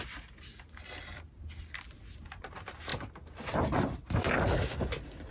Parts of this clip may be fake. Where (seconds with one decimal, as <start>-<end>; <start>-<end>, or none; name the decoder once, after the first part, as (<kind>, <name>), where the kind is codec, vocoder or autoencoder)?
none